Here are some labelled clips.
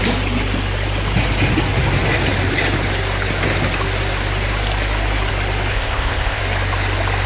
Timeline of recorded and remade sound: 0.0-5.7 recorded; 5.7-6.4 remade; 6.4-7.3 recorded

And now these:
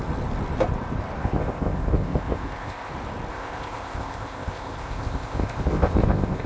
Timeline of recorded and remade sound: 0.0-1.2 recorded; 1.2-2.9 remade; 2.9-3.3 recorded; 3.3-6.5 remade

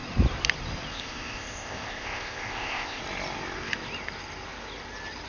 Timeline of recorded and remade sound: 0.0-0.9 recorded; 0.9-3.0 remade; 3.0-5.3 recorded